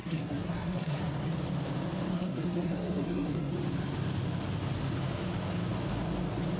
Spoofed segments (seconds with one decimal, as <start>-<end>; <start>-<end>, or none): 0.0-1.0; 2.1-3.5